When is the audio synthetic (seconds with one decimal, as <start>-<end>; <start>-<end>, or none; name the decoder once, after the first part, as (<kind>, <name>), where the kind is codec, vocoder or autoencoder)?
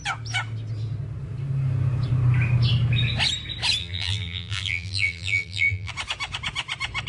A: 3.8-5.9 (vocoder, BigVGAN v2)